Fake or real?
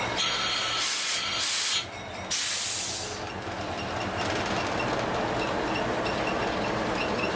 real